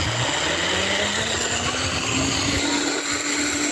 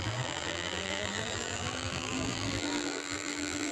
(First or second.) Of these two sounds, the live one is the first